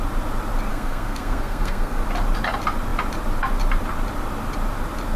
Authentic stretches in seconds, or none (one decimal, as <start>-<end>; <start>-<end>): 0.0-0.7; 2.0-5.2